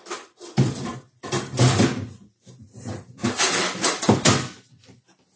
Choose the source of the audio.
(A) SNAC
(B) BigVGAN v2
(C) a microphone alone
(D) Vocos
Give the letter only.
B